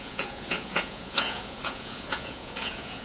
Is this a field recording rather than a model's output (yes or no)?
no